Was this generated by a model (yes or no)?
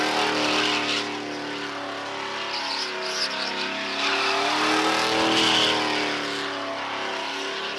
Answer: no